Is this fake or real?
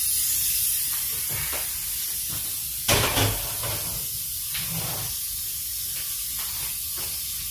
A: real